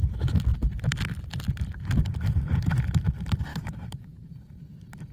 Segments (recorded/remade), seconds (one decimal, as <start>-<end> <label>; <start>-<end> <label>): 0.0-3.5 recorded; 3.5-4.3 remade; 4.3-5.1 recorded